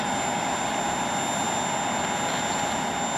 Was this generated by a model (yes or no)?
no